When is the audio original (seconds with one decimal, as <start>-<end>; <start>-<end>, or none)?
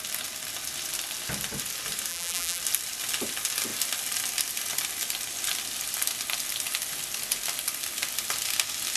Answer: 0.0-2.1; 2.6-9.0